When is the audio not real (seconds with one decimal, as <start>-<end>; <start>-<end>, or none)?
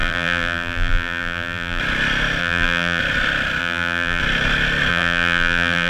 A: 0.0-1.8; 2.4-3.0; 3.6-4.2; 4.9-5.9